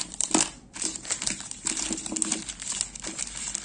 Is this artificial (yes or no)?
no